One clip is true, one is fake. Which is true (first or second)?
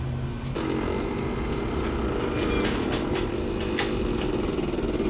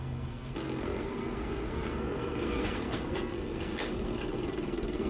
first